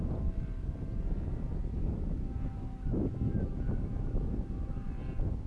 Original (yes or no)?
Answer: yes